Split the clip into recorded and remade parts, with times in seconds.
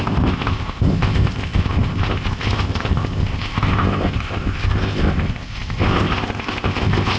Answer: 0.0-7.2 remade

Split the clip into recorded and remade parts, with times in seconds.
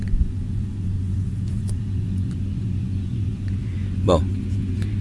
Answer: 0.0-5.0 remade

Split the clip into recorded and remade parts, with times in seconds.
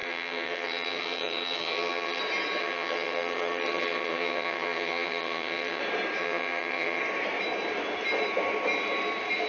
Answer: 0.0-2.2 remade; 2.2-2.6 recorded; 2.6-5.8 remade; 5.8-6.2 recorded; 6.2-7.0 remade; 7.0-9.5 recorded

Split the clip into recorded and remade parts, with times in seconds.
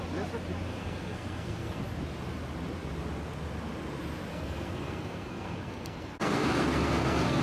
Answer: 0.0-0.7 recorded; 0.7-1.8 remade; 1.8-4.3 recorded; 4.3-7.4 remade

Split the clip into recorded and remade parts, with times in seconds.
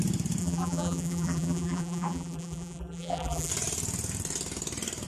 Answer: 0.0-0.4 recorded; 0.4-3.5 remade; 3.5-5.1 recorded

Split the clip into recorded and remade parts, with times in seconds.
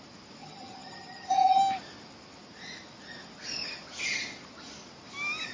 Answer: 0.0-0.4 recorded; 0.4-1.6 remade; 1.6-5.5 recorded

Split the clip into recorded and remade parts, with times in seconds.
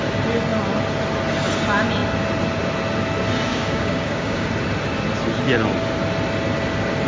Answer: 0.0-3.5 recorded; 3.5-4.5 remade; 4.5-7.1 recorded